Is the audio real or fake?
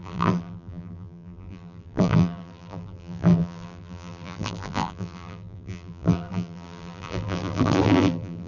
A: fake